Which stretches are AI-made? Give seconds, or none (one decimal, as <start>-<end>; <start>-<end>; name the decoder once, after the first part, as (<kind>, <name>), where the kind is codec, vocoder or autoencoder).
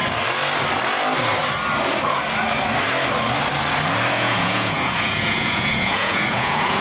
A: 4.1-6.8 (vocoder, Vocos)